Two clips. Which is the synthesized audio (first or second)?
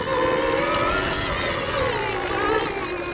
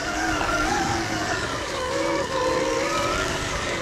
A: second